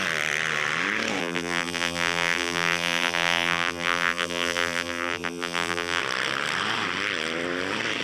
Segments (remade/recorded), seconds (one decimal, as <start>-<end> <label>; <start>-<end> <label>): 0.0-1.2 recorded; 1.2-6.0 remade; 6.0-8.0 recorded